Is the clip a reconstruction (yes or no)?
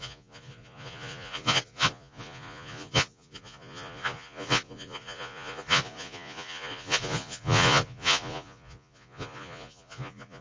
yes